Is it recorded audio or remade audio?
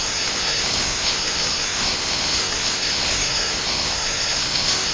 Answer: remade